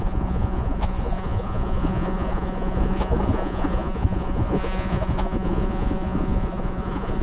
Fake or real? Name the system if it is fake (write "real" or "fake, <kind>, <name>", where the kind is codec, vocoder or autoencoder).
fake, vocoder, Vocos